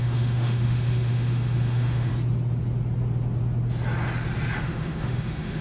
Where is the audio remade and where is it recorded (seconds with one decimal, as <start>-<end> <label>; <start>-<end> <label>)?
0.0-2.1 remade; 2.1-4.6 recorded; 4.6-5.6 remade